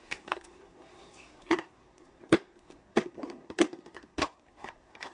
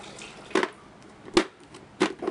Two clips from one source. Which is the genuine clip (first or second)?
second